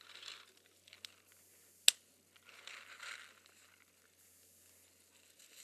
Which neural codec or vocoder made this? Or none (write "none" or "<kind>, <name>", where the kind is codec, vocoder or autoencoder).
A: none